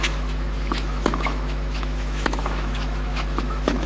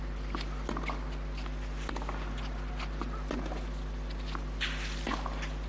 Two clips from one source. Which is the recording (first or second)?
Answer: second